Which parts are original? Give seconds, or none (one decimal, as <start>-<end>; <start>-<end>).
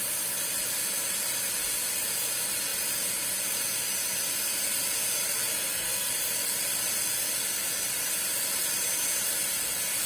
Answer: 0.0-5.5; 6.1-10.1